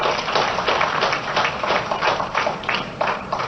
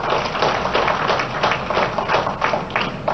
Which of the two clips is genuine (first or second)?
second